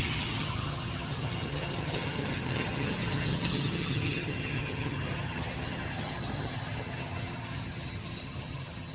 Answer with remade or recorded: remade